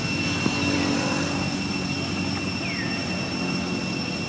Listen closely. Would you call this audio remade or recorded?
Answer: recorded